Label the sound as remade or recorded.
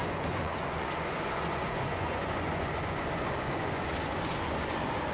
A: remade